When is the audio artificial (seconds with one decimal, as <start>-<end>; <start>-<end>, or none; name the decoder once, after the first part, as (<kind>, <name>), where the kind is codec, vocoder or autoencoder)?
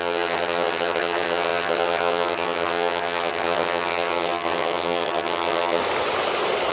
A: 0.0-5.8 (vocoder, HiFi-GAN)